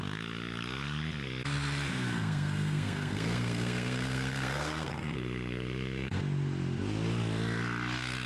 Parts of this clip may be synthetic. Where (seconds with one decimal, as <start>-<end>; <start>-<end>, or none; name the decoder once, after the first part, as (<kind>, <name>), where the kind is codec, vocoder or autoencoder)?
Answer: 1.9-6.2 (codec, SNAC)